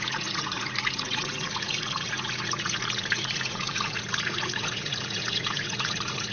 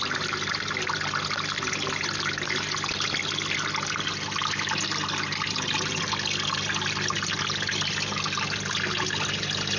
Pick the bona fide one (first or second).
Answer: second